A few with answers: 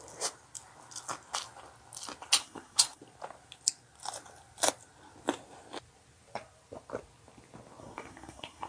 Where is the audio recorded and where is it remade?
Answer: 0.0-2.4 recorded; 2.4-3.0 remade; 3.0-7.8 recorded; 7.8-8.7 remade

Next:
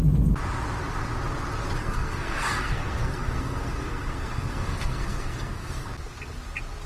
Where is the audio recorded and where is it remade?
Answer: 0.0-1.8 recorded; 1.8-5.9 remade; 5.9-6.9 recorded

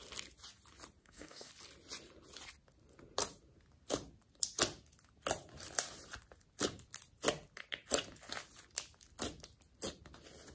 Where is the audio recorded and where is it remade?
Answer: 0.0-1.0 recorded; 1.0-1.5 remade; 1.5-10.5 recorded

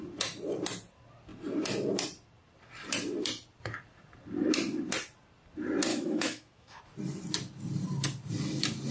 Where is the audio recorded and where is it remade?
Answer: 0.0-5.9 recorded; 5.9-6.8 remade; 6.8-8.9 recorded